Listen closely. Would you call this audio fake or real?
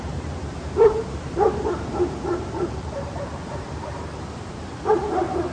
fake